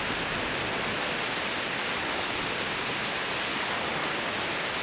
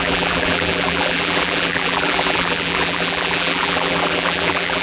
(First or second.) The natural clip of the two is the first